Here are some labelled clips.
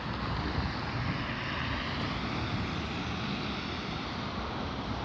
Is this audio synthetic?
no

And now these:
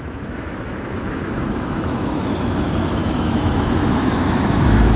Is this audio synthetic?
yes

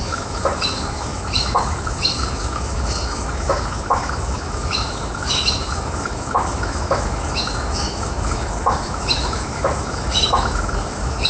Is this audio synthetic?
yes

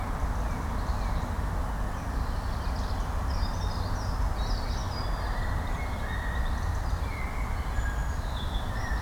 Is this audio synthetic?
no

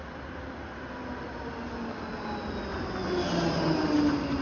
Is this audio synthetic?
no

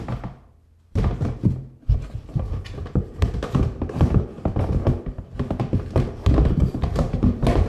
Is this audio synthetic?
no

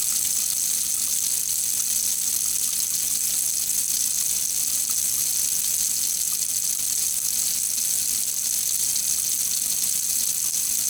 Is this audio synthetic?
no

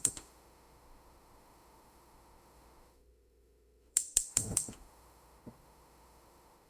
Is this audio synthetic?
yes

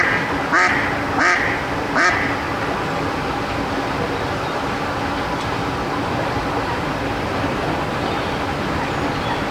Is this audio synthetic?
no